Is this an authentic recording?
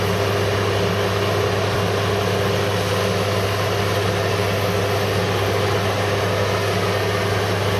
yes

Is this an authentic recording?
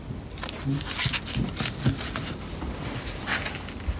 yes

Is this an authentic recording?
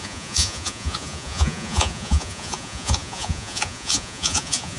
no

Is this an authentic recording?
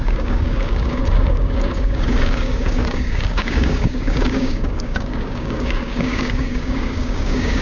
no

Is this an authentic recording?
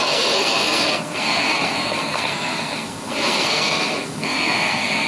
no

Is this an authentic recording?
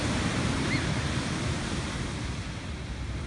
no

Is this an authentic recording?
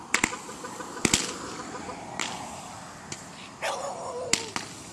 yes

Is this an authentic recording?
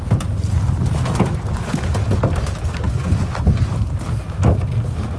yes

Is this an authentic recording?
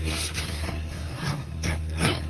no